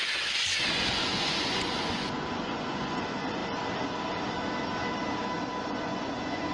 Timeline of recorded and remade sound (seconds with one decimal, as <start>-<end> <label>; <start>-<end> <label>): 0.0-3.4 remade; 3.4-5.6 recorded; 5.6-6.5 remade